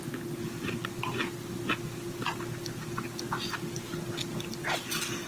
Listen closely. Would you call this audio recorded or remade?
recorded